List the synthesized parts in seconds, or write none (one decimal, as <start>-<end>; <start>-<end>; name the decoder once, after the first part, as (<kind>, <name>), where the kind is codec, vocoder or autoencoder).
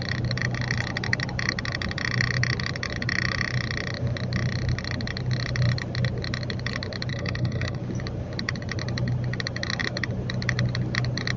7.1-7.8 (codec, SNAC)